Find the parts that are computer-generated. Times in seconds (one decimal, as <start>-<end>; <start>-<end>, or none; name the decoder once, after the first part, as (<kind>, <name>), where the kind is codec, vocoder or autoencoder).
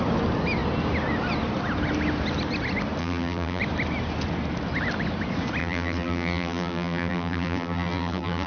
3.0-3.6 (vocoder, BigVGAN v2); 5.6-8.5